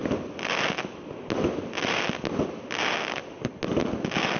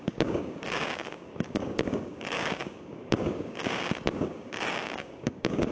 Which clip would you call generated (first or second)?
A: second